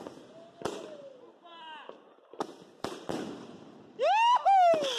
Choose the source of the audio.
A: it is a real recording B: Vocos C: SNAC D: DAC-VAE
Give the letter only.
A